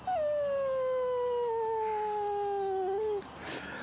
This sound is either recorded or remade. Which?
recorded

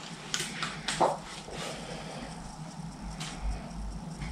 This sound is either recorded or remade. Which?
remade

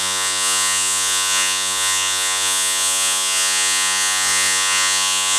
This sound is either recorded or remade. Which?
remade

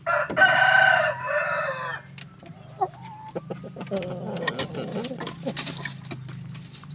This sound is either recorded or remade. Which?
recorded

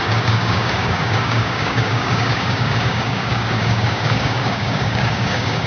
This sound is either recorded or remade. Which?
remade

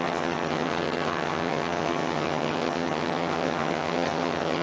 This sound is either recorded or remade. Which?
remade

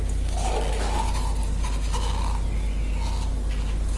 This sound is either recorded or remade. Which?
recorded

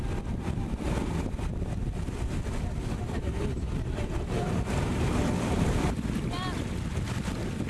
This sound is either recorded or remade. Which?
remade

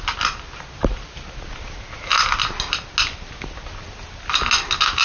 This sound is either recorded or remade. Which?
recorded